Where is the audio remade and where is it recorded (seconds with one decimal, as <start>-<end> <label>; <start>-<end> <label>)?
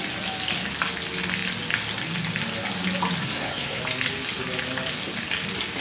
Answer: 0.0-3.2 recorded; 3.2-3.8 remade; 3.8-5.8 recorded